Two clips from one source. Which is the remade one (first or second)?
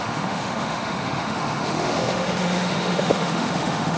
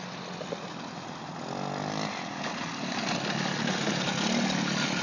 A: first